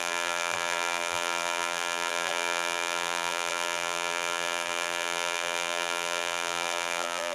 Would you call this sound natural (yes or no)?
no